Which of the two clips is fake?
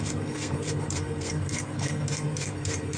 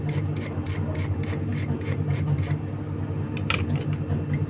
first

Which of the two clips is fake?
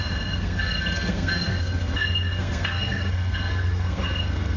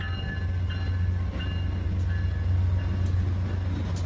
first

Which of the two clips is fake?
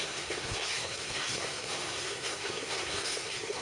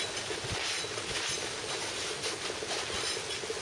first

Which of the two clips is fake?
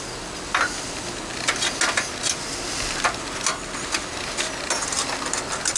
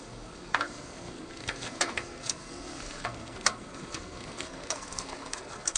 second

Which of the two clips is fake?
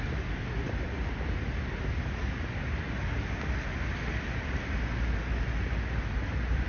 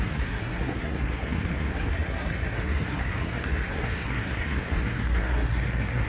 second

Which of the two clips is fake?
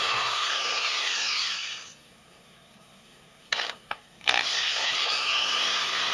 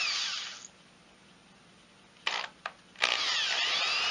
first